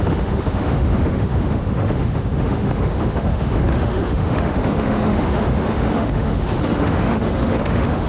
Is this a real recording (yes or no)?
no